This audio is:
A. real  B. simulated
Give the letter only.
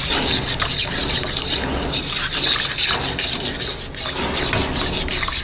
A